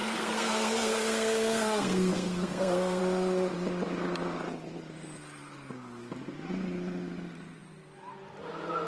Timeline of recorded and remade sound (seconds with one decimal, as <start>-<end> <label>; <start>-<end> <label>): 0.0-3.0 remade; 3.0-8.9 recorded